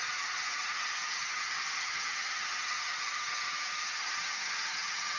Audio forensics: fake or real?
fake